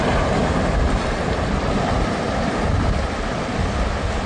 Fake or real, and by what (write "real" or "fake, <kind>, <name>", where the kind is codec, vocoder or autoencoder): fake, vocoder, BigVGAN v2